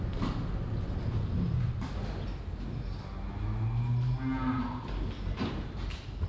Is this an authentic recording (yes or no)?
yes